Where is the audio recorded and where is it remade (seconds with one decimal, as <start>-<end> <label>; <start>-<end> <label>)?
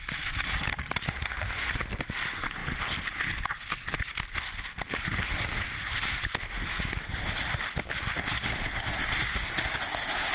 0.0-10.3 recorded